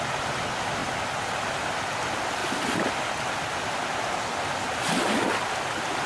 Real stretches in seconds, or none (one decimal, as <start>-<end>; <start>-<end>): 0.0-6.1